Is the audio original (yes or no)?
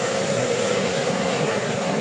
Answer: no